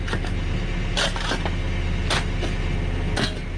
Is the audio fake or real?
real